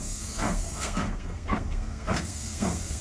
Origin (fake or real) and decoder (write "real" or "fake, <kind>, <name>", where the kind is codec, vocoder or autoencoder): fake, codec, SNAC